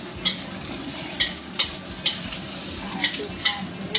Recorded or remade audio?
recorded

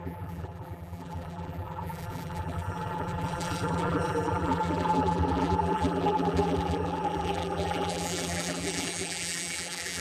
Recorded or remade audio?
remade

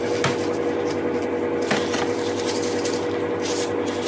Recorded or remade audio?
recorded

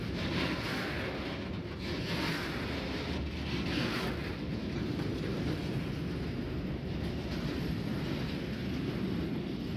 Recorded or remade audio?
recorded